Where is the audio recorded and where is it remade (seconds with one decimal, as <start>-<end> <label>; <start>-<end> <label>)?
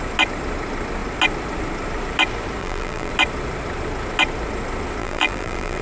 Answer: 0.0-2.6 recorded; 2.6-3.1 remade; 3.1-5.0 recorded; 5.0-5.8 remade